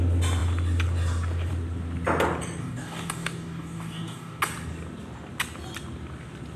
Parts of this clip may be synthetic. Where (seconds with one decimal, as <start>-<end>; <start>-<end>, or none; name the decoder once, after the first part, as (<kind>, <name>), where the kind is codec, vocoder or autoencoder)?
2.6-4.4 (codec, DAC)